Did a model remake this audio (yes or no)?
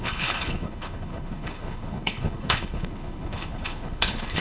yes